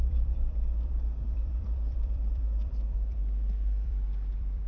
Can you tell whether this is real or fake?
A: fake